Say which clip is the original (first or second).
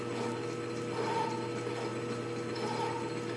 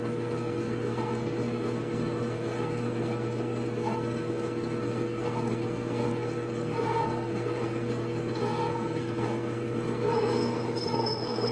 first